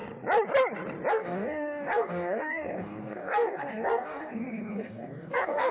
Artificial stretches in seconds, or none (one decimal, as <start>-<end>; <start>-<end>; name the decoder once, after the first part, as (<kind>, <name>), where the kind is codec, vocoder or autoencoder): 1.1-5.7 (codec, DAC)